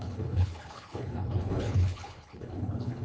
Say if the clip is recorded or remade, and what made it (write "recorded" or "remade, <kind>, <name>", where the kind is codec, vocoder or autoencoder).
remade, codec, HILCodec